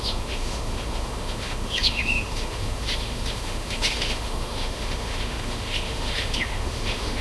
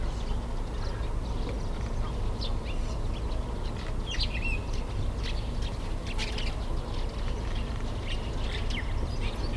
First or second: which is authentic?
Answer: second